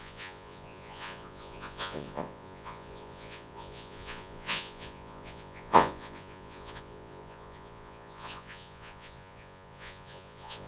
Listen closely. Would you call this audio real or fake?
fake